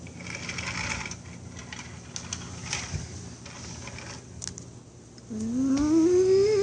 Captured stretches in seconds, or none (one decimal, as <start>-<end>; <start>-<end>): 0.0-6.6